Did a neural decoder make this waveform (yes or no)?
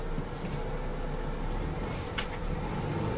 no